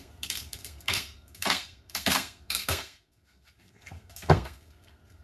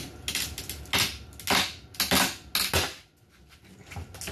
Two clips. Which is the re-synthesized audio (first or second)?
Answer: first